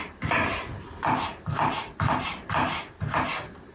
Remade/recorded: recorded